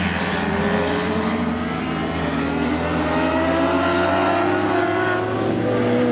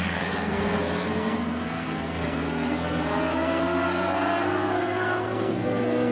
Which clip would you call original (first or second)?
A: first